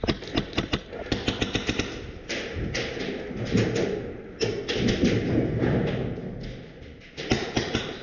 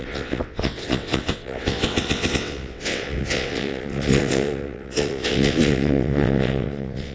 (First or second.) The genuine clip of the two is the first